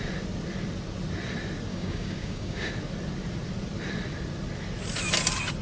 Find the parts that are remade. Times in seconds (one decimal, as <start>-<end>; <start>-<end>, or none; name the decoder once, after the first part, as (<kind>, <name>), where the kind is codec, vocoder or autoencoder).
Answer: 1.7-2.7 (codec, DAC)